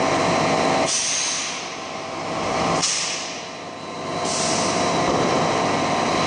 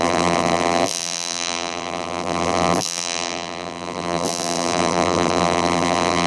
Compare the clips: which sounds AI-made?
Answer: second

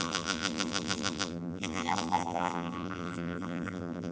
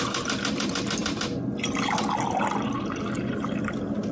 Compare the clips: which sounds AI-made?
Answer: first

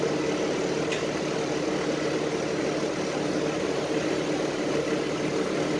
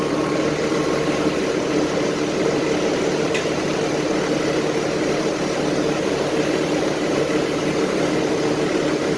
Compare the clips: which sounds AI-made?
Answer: second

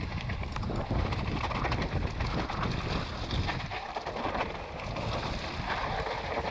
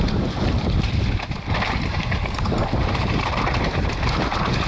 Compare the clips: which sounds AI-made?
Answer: second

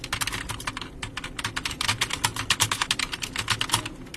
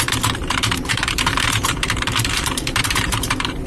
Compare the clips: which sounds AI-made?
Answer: second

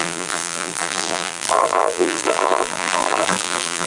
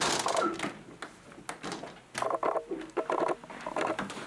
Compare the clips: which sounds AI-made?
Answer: first